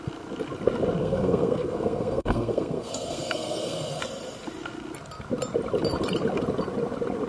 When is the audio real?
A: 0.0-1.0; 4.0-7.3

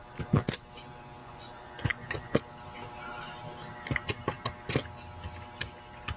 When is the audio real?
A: 0.0-1.2; 2.4-6.2

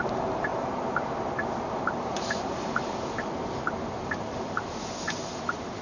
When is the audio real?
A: 0.0-0.5; 3.1-5.0

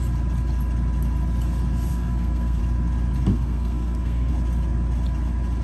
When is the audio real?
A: 0.0-1.9; 2.6-3.3; 4.3-5.6

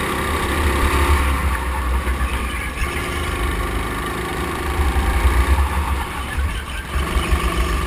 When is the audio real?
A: 0.0-1.4; 2.7-4.3; 6.5-7.9